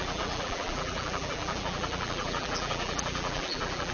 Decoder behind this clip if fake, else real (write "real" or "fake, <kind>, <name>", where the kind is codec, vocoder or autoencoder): fake, vocoder, BigVGAN v2